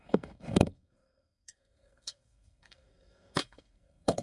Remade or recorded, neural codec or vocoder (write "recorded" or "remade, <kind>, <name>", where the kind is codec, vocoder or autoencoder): remade, codec, SNAC